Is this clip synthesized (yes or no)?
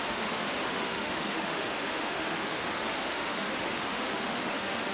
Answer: yes